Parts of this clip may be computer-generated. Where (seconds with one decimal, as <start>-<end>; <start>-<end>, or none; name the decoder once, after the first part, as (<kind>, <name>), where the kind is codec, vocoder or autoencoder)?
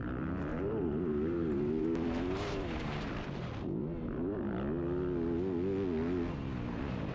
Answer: 0.5-3.1 (vocoder, BigVGAN v2)